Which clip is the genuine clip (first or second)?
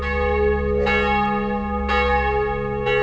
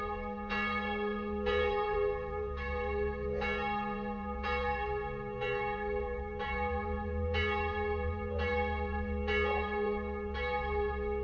first